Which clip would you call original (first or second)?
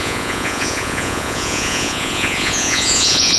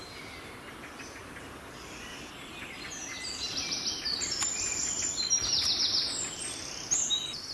second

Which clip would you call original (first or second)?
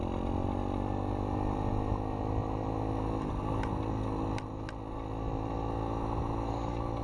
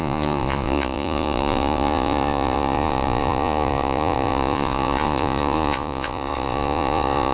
first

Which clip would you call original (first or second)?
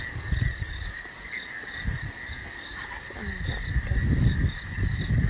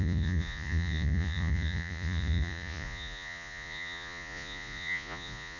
first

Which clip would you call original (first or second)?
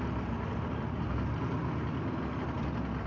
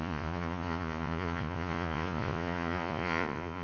first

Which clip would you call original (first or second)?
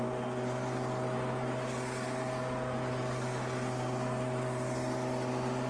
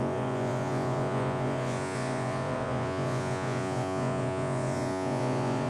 first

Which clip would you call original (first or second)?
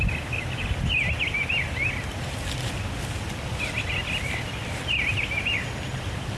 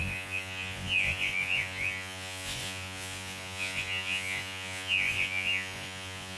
first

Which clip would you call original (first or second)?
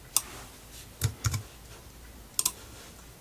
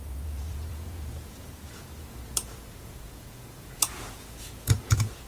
first